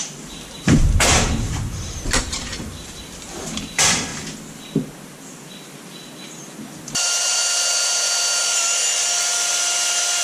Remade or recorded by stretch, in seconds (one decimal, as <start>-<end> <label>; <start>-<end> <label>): 0.0-4.1 remade; 4.1-6.9 recorded; 6.9-7.4 remade; 7.4-10.2 recorded